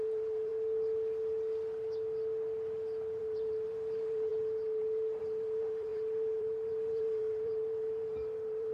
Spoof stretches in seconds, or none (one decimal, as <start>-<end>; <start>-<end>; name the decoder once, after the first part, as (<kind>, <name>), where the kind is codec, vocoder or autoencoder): 0.0-0.5 (vocoder, BigVGAN v2); 3.2-8.7